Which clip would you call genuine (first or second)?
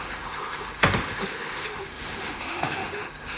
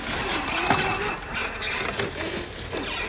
second